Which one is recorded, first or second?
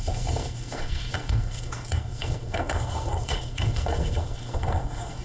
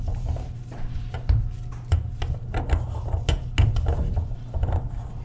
second